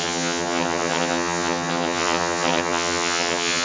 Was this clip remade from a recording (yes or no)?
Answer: yes